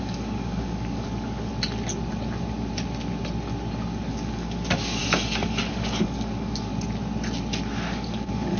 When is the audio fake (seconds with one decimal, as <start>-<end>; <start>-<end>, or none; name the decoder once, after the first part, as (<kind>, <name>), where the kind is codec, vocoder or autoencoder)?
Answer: 0.0-1.5 (codec, DAC); 4.1-5.0; 5.7-6.7; 7.9-8.6